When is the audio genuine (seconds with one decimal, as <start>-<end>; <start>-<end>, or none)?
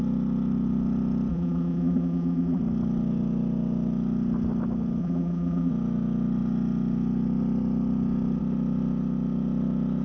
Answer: 0.0-1.3; 2.6-5.0; 5.7-10.0